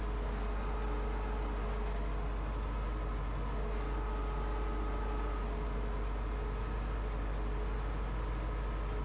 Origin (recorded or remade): recorded